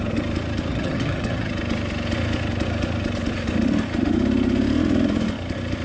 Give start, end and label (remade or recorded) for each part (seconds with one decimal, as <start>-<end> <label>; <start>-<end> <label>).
0.0-0.7 recorded; 0.7-1.5 remade; 1.5-5.8 recorded